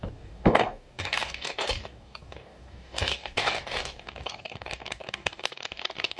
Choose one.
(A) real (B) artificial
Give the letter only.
B